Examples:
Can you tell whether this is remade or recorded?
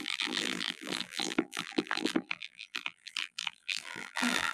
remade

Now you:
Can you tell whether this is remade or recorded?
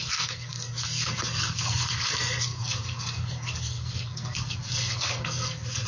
remade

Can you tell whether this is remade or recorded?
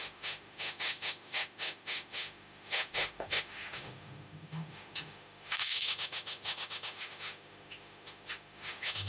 remade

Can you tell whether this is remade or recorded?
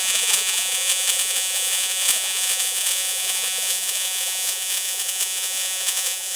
remade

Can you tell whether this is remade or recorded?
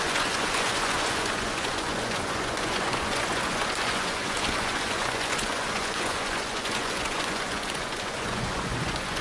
remade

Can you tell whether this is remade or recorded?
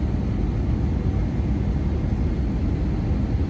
recorded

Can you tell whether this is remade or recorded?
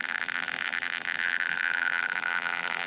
remade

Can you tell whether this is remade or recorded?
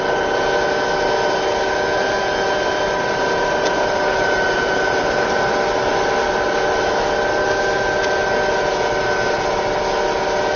recorded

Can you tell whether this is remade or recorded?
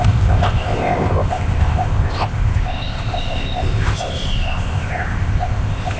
remade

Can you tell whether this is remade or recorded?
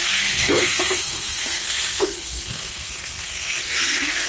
remade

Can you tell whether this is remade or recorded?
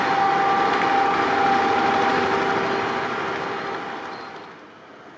recorded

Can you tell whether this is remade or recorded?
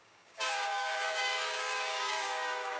remade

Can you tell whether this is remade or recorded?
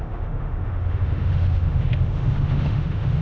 remade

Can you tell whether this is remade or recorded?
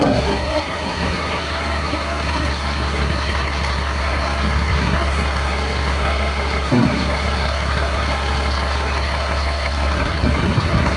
remade